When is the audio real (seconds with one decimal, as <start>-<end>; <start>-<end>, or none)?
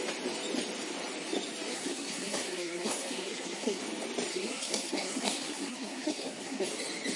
0.0-1.7; 3.8-4.3; 6.7-7.2